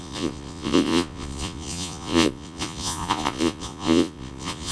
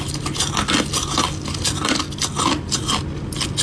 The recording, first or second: second